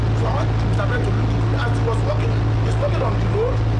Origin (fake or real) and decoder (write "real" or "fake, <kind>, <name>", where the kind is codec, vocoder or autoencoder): real